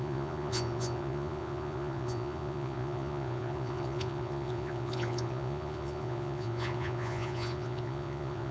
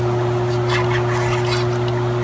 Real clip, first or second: second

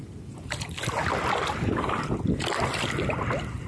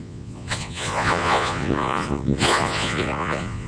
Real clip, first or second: first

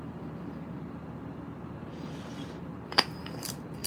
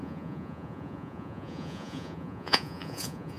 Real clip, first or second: first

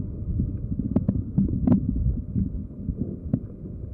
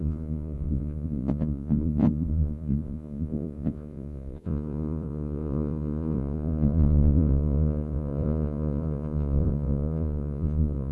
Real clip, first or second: first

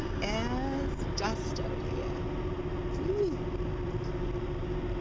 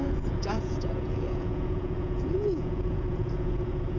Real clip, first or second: first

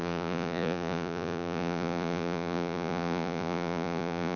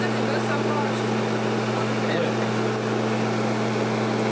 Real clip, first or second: second